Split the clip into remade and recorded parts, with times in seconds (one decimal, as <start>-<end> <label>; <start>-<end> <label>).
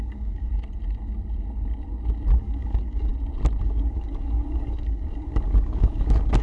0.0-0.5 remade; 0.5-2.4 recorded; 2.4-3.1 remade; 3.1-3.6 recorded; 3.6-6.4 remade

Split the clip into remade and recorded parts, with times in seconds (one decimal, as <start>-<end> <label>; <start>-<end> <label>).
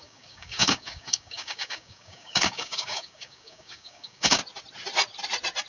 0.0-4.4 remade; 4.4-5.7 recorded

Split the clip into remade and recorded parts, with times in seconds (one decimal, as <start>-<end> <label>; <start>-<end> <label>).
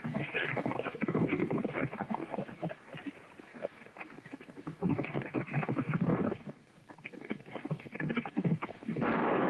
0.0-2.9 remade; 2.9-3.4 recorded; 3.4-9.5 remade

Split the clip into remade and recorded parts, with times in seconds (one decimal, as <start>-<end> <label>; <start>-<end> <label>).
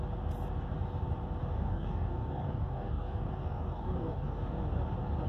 0.0-1.4 recorded; 1.4-4.6 remade; 4.6-5.3 recorded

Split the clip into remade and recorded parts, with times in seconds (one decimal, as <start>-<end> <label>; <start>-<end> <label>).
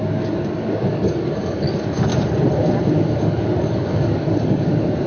0.0-2.1 remade; 2.1-2.9 recorded; 2.9-5.1 remade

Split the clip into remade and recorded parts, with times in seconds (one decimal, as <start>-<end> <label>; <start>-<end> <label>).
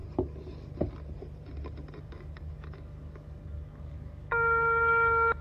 0.0-2.0 recorded; 2.0-5.4 remade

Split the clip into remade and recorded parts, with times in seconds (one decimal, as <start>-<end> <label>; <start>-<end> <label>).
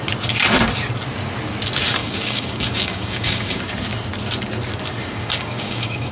0.0-2.0 recorded; 2.0-3.6 remade; 3.6-5.1 recorded; 5.1-6.1 remade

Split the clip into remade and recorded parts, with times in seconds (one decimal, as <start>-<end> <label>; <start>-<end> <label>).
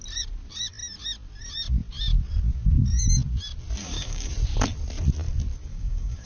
0.0-3.8 recorded; 3.8-4.3 remade; 4.3-5.7 recorded; 5.7-6.3 remade